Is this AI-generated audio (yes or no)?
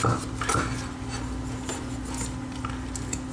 no